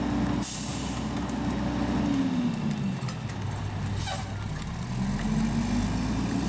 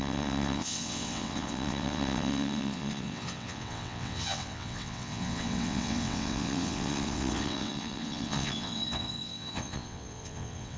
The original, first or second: first